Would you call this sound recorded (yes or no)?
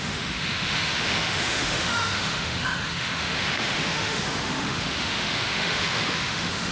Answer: no